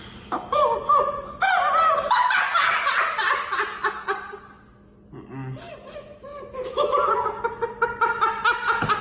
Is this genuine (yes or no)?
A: yes